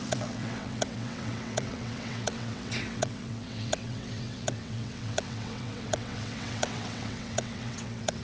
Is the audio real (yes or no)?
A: no